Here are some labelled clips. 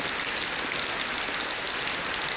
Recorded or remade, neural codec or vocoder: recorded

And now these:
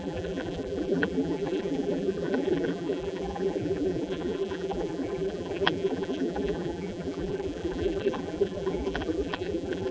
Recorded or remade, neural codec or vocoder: remade, vocoder, BigVGAN v2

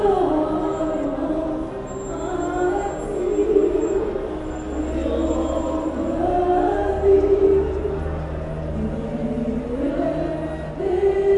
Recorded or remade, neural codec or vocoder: recorded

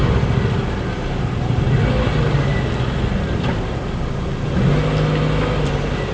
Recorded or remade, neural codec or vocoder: recorded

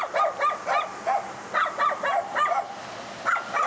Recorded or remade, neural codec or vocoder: recorded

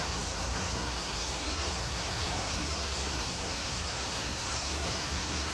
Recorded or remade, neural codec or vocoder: remade, codec, SNAC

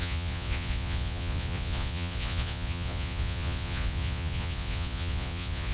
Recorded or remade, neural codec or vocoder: remade, vocoder, Vocos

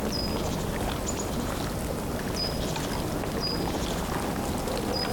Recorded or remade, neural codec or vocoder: recorded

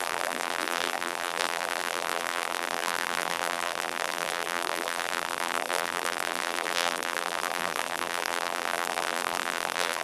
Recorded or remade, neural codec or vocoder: remade, vocoder, BigVGAN v2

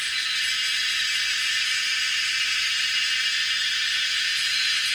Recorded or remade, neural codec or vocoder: recorded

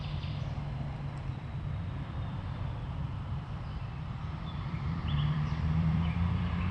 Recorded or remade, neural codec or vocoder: remade, vocoder, BigVGAN v2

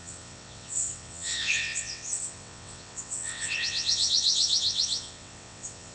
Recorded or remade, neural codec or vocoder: remade, vocoder, WaveNeXt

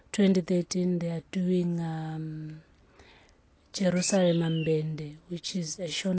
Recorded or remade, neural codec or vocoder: recorded